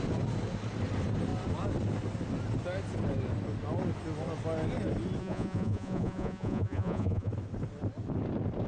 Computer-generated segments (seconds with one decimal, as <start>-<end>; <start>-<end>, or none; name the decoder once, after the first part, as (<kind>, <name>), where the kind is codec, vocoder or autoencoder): 5.2-7.3 (vocoder, Vocos)